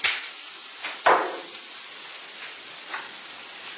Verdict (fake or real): real